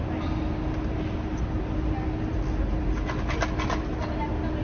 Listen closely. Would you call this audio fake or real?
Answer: real